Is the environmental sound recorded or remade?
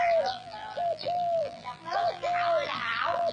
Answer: remade